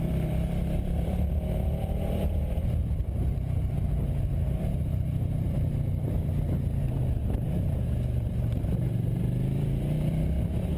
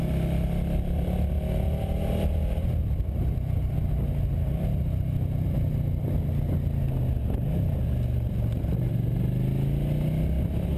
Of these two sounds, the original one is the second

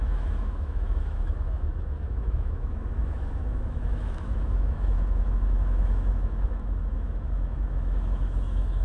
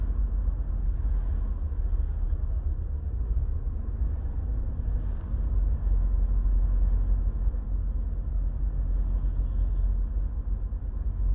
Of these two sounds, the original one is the second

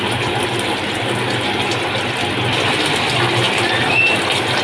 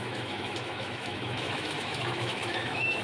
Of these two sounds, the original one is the first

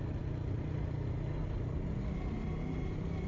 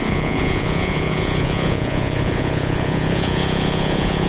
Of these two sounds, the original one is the first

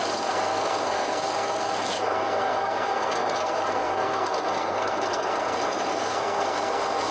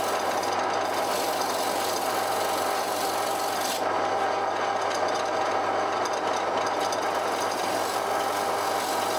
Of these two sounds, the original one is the second